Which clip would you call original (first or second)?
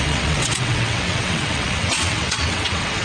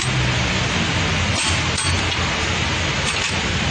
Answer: second